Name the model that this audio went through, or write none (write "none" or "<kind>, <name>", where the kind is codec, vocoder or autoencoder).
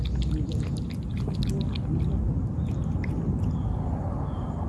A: none